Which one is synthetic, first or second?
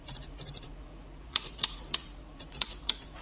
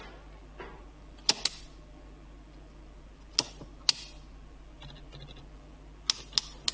first